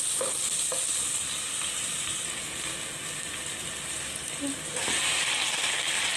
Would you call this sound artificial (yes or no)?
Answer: no